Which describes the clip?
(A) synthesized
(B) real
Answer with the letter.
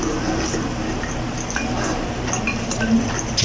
B